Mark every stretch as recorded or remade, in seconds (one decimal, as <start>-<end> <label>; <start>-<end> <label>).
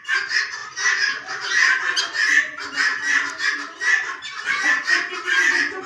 0.0-5.9 recorded